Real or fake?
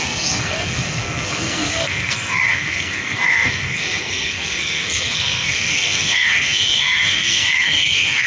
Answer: fake